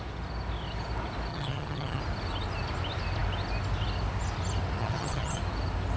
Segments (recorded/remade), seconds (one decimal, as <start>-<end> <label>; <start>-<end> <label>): 0.0-1.3 recorded; 1.3-2.0 remade; 2.0-4.8 recorded; 4.8-5.4 remade; 5.4-6.0 recorded